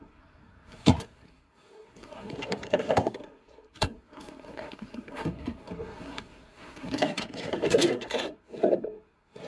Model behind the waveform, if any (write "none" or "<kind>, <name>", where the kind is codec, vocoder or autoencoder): codec, SNAC